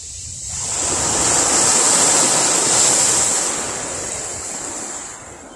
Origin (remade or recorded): recorded